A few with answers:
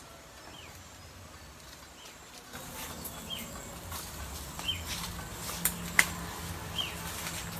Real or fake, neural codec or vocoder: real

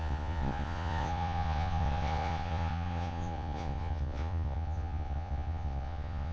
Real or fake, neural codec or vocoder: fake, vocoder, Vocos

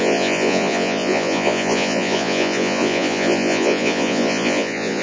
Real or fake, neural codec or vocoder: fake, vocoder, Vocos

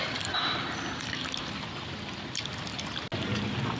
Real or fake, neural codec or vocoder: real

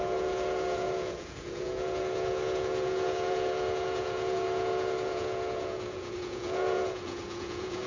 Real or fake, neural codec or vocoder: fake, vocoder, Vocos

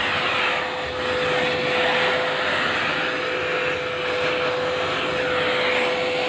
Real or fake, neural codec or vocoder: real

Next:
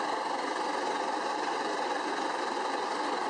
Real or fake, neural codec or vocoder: real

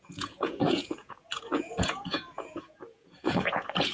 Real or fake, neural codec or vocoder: fake, vocoder, Vocos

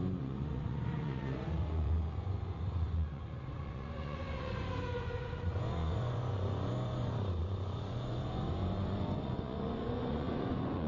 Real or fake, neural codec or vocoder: fake, vocoder, Vocos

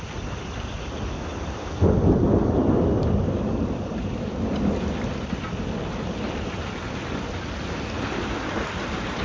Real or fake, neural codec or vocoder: real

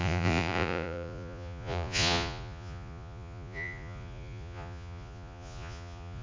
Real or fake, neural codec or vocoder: fake, vocoder, Vocos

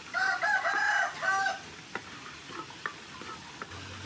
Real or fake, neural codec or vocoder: real